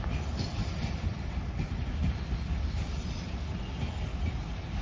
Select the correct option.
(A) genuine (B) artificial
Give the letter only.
A